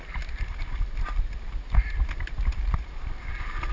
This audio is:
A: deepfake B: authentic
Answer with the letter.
B